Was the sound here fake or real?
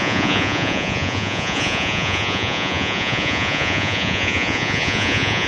fake